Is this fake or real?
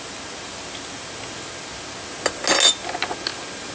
real